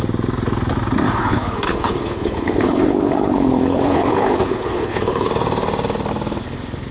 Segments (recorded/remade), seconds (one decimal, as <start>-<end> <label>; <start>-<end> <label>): 0.0-1.2 recorded; 1.2-5.3 remade; 5.3-6.9 recorded